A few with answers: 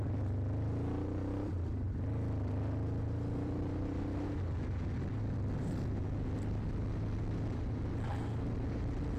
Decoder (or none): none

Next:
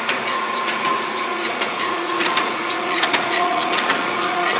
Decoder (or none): vocoder, Vocos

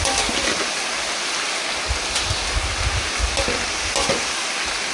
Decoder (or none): none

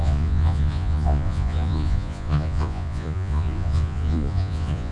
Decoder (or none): vocoder, Vocos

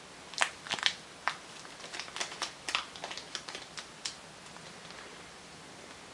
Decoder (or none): vocoder, BigVGAN v2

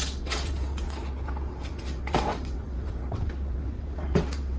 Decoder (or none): vocoder, WaveNeXt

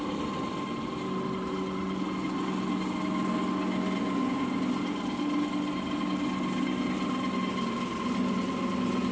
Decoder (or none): none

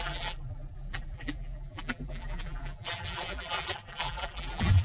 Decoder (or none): vocoder, BigVGAN v2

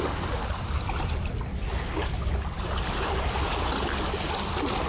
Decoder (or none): none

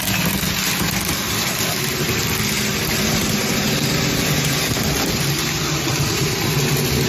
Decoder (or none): none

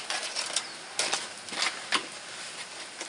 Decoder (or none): none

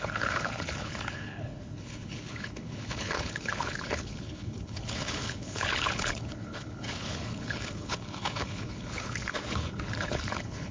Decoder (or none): codec, HILCodec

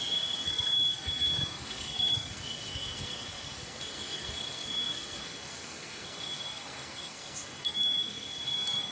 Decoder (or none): codec, SNAC